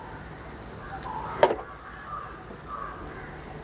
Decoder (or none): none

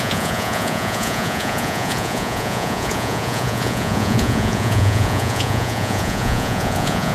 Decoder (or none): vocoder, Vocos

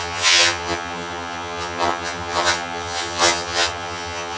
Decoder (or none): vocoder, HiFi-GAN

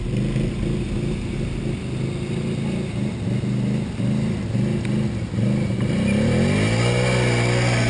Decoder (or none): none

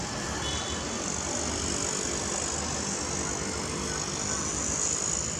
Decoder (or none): none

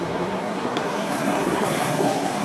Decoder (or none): codec, SNAC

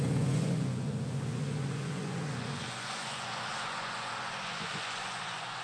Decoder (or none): vocoder, Vocos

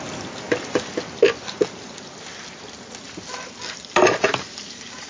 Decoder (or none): none